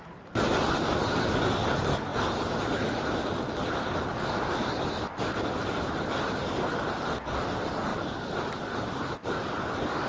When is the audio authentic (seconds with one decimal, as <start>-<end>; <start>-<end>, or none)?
0.0-10.1